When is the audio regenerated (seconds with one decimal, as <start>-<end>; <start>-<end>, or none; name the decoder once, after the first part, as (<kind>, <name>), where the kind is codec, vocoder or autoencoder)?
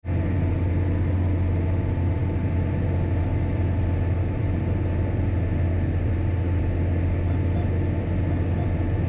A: none